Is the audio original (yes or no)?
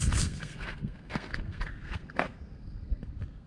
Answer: no